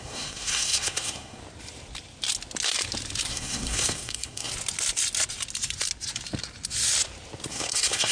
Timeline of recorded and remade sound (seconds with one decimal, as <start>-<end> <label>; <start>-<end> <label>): 0.0-1.4 remade; 1.4-3.3 recorded; 3.3-4.5 remade; 4.5-7.5 recorded; 7.5-8.1 remade